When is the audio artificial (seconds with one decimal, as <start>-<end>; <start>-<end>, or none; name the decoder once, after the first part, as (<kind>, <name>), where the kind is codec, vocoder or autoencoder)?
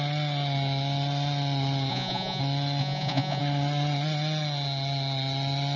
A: 1.9-2.4 (vocoder, Vocos); 2.8-3.4